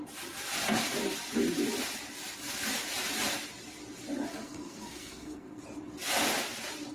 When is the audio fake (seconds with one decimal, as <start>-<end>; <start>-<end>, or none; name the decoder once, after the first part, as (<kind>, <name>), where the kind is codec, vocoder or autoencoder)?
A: 4.3-5.6 (codec, SNAC)